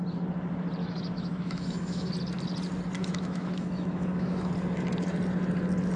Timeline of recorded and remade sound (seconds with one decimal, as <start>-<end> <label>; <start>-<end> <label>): 0.0-0.8 recorded; 0.8-2.1 remade; 2.1-3.0 recorded; 3.0-4.5 remade; 4.5-6.0 recorded

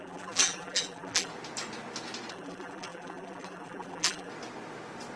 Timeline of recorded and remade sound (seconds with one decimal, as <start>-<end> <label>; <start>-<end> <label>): 0.0-1.3 remade; 1.3-2.3 recorded; 2.3-4.3 remade; 4.3-5.2 recorded

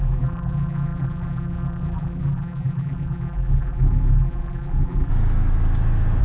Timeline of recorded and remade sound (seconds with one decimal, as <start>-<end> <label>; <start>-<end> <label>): 0.0-5.1 remade; 5.1-6.2 recorded

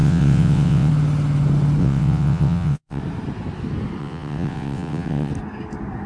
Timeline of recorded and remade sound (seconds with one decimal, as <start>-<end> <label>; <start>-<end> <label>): 0.0-0.9 remade; 0.9-1.8 recorded; 1.8-3.0 remade; 3.0-4.0 recorded; 4.0-5.3 remade; 5.3-6.1 recorded

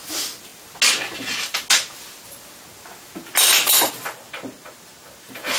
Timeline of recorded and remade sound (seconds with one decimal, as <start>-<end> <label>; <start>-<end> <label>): 0.0-5.6 recorded